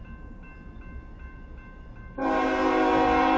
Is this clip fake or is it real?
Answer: real